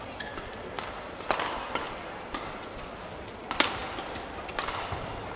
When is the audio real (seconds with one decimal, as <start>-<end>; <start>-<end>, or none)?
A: 3.8-4.5